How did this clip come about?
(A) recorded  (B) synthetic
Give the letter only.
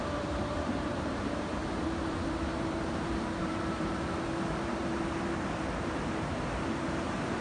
B